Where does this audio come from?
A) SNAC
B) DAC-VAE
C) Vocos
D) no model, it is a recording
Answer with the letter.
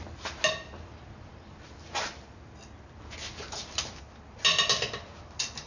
D